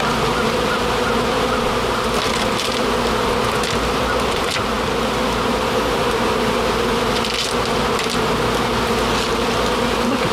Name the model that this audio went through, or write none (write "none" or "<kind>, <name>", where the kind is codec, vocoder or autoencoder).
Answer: none